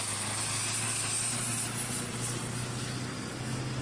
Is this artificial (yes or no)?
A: no